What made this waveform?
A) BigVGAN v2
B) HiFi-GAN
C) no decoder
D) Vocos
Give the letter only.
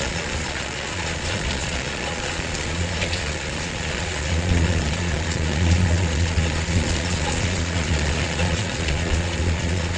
D